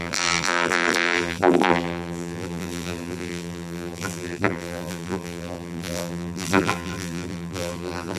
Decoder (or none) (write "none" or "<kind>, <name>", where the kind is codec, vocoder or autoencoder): vocoder, BigVGAN v2